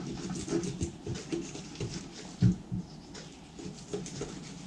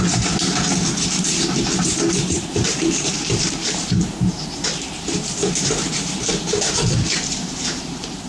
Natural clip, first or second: first